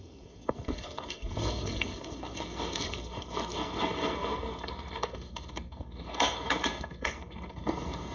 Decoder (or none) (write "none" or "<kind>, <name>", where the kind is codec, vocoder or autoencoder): codec, SNAC